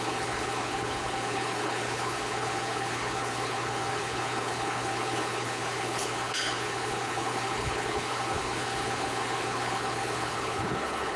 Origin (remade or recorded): remade